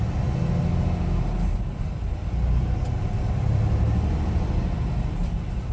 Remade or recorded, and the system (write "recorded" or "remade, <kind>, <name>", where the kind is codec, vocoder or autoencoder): recorded